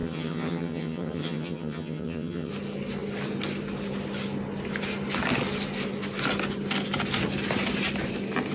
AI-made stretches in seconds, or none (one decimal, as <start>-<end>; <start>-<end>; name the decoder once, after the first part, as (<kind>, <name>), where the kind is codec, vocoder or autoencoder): 0.0-2.5 (vocoder, HiFi-GAN)